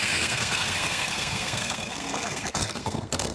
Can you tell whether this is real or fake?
fake